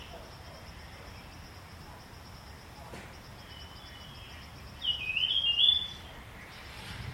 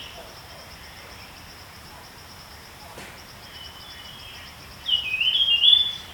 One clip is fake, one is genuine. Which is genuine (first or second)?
first